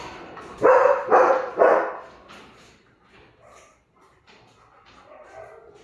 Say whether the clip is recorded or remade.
remade